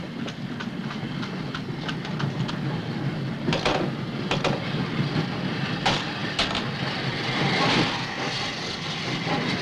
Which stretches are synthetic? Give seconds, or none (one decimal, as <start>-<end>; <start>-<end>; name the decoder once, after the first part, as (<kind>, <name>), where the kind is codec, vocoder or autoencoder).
none